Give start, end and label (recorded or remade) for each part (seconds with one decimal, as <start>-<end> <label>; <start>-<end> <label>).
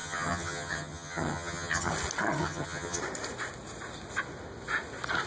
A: 0.0-1.9 remade; 1.9-2.4 recorded; 2.4-3.0 remade; 3.0-5.3 recorded